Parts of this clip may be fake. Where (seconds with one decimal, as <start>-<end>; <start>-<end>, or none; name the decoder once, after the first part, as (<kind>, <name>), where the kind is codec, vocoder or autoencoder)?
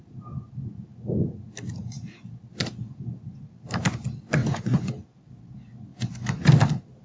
4.4-4.9 (vocoder, Vocos); 5.9-6.5